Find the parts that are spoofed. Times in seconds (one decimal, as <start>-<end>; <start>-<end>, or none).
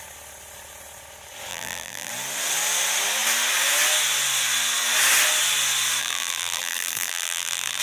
1.5-2.1; 6.0-7.8